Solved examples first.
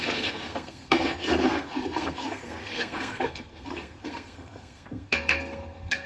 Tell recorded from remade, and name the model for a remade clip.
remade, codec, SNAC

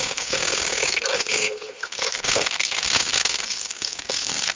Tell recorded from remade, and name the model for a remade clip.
remade, codec, SNAC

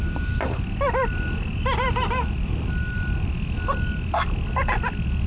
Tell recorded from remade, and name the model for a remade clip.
recorded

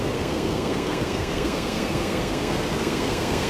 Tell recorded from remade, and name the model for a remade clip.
remade, codec, SNAC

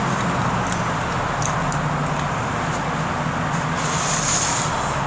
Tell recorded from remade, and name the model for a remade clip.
recorded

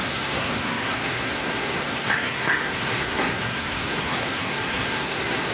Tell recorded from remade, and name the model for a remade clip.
remade, codec, SNAC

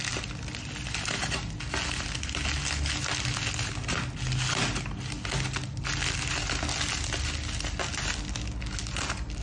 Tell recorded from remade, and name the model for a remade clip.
recorded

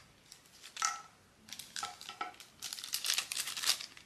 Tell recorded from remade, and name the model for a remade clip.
recorded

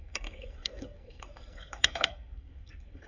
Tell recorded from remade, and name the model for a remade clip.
remade, codec, SNAC